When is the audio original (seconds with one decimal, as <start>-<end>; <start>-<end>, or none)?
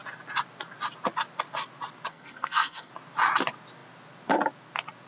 0.0-2.1; 2.9-5.1